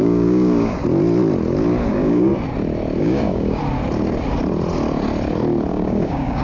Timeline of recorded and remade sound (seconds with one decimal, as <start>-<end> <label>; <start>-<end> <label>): 0.0-0.8 remade; 0.8-1.9 recorded; 1.9-2.3 remade; 2.3-3.0 recorded; 3.0-3.6 remade; 3.6-5.7 recorded; 5.7-6.4 remade